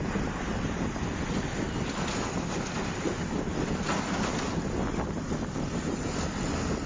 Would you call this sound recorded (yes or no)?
yes